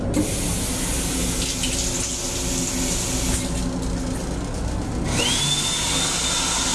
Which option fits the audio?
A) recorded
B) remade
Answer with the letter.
A